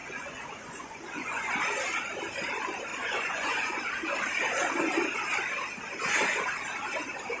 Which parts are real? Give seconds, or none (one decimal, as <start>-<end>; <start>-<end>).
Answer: 1.5-2.9; 3.8-7.4